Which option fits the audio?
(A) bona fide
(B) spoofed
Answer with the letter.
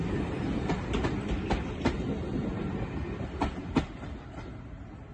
A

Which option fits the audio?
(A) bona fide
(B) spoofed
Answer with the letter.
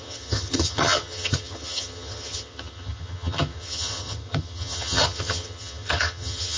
B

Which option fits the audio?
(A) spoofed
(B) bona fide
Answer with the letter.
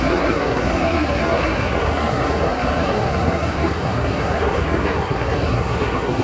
A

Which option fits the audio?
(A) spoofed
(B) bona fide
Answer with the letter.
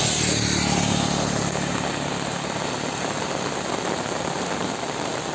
B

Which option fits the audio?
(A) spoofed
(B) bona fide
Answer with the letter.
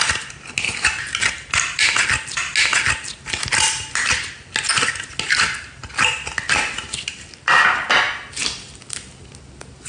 B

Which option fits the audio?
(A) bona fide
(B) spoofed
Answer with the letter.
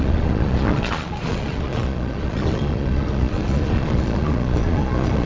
B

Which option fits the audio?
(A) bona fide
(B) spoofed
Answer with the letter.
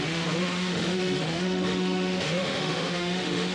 B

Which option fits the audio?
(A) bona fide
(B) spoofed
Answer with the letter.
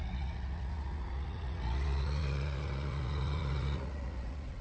B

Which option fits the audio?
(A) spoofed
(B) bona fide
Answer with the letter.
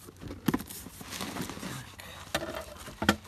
B